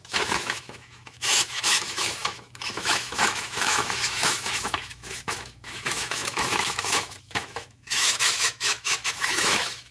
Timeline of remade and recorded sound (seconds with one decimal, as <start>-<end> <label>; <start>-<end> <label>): 0.0-9.9 remade

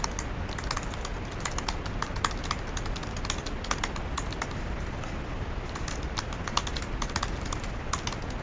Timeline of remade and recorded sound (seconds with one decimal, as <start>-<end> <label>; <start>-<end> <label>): 0.0-8.4 recorded